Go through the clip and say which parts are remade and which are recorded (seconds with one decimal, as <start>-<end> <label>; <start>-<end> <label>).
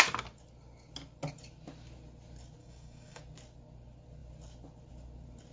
0.0-2.6 recorded; 2.6-3.2 remade; 3.2-5.5 recorded